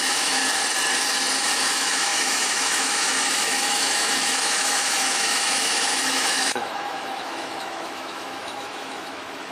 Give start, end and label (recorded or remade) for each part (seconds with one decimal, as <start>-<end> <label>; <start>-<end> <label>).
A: 0.0-0.4 remade; 0.4-1.4 recorded; 1.4-9.5 remade

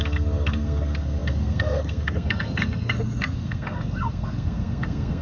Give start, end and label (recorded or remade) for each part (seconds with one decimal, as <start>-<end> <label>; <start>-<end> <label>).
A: 0.0-5.2 remade

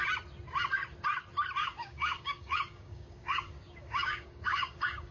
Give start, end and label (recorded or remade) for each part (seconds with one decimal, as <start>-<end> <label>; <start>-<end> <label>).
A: 0.0-1.6 recorded; 1.6-5.1 remade

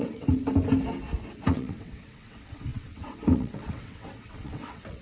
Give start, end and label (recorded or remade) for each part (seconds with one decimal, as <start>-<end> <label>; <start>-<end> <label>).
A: 0.0-0.4 remade; 0.4-1.5 recorded; 1.5-5.0 remade